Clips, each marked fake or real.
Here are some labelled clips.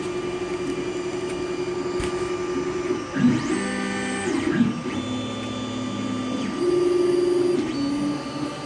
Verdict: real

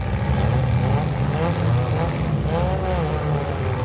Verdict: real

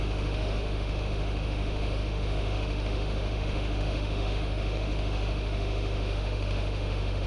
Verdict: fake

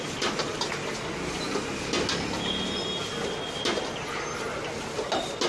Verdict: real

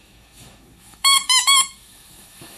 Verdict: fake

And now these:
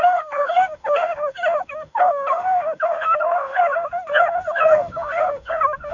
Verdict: fake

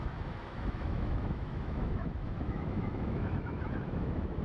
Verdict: fake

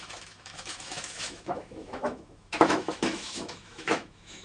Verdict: fake